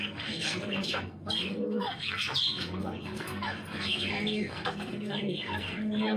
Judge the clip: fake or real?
fake